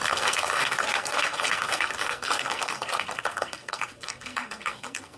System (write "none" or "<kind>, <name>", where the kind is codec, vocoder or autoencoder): codec, SNAC